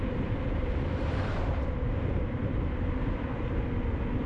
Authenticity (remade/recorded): remade